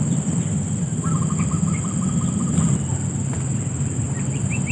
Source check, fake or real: real